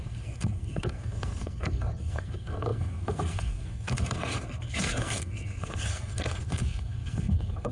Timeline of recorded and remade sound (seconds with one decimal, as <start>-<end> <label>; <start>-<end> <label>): 0.0-7.7 remade